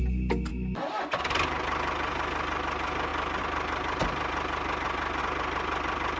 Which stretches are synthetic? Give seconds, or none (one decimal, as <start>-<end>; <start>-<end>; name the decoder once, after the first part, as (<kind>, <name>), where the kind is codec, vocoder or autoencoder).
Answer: none